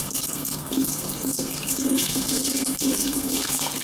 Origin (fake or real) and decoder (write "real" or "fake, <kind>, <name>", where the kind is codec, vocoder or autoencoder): fake, codec, SNAC